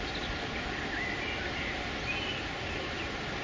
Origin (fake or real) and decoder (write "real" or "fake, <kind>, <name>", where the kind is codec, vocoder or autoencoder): real